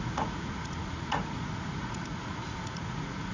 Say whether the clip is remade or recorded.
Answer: remade